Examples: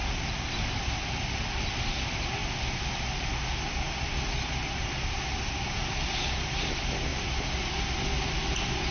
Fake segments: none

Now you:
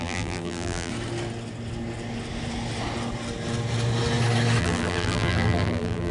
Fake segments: 0.0-0.9 (vocoder, BigVGAN v2); 4.6-6.1

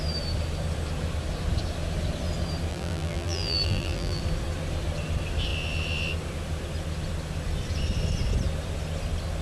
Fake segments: 2.7-4.2 (vocoder, BigVGAN v2)

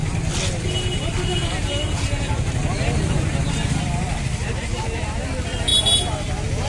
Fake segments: none

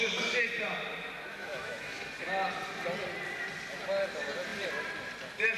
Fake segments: 1.3-2.1 (autoencoder, DAC-VAE)